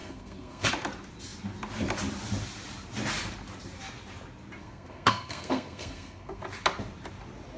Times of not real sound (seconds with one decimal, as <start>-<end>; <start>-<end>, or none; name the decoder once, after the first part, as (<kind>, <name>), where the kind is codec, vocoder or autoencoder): 0.0-0.7 (codec, SNAC); 4.6-6.4